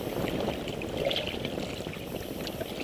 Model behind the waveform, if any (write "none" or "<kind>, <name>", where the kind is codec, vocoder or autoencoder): none